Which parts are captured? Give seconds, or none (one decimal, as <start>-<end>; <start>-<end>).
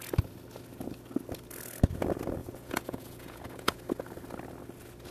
0.0-2.4; 3.9-5.1